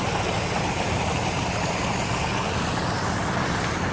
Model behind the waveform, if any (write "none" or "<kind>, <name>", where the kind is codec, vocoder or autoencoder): none